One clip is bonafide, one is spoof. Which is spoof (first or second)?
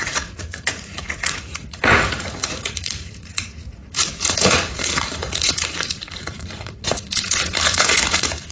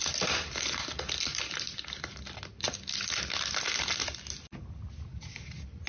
first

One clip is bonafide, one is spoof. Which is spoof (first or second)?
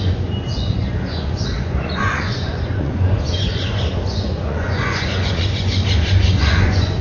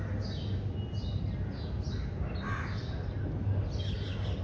first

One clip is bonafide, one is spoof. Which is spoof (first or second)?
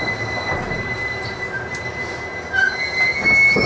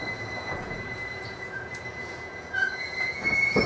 second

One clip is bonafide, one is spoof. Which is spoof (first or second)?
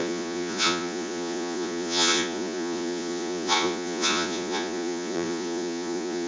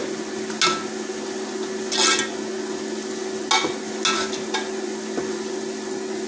first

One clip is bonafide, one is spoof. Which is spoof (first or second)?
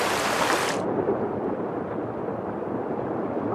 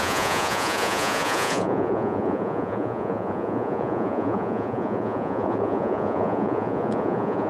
second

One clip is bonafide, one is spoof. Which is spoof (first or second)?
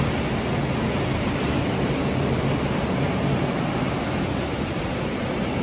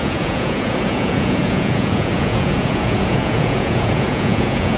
second